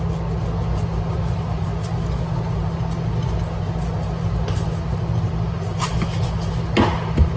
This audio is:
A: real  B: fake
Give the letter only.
A